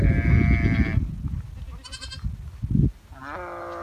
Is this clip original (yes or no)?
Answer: yes